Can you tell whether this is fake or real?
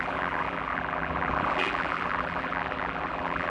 fake